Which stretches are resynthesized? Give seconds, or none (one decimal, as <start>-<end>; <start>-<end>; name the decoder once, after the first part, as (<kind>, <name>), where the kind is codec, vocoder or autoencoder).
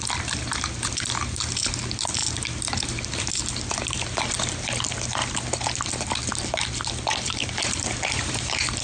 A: none